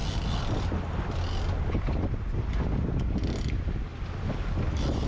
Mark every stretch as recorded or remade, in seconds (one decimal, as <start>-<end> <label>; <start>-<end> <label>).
0.0-5.1 recorded

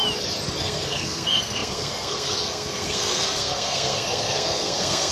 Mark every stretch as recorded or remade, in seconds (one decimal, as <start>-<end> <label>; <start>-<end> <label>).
0.0-0.6 recorded; 0.6-5.1 remade

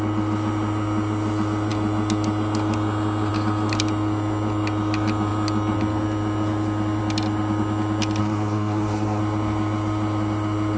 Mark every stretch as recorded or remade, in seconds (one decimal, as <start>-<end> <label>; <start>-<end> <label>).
0.0-8.2 recorded; 8.2-9.2 remade; 9.2-10.8 recorded

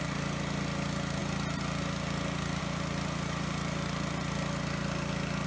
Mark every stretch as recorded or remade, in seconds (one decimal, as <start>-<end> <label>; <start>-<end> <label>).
0.0-5.5 recorded

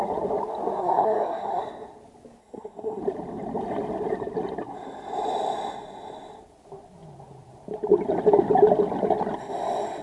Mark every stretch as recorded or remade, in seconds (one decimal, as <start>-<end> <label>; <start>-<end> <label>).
0.0-0.8 recorded; 0.8-1.6 remade; 1.6-2.4 recorded; 2.4-3.0 remade; 3.0-10.0 recorded

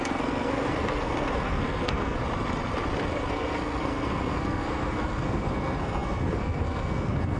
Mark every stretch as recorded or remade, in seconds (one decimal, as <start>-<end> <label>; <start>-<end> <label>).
0.0-2.2 remade; 2.2-3.3 recorded; 3.3-7.4 remade

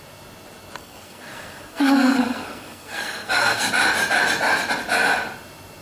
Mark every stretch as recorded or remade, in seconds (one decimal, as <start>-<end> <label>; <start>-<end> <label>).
0.0-0.8 recorded; 0.8-3.7 remade; 3.7-5.8 recorded

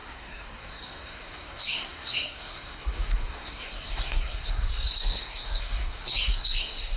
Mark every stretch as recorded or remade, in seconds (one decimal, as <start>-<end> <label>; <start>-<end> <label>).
0.0-7.0 remade